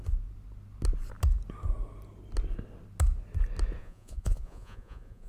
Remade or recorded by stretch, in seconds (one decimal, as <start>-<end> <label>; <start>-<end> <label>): 0.0-3.8 recorded; 3.8-5.3 remade